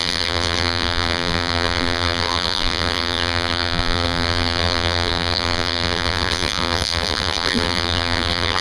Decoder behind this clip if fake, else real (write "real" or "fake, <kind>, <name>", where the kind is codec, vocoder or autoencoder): fake, vocoder, BigVGAN v2